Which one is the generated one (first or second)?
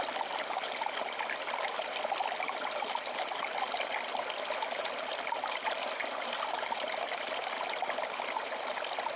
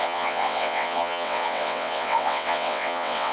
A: second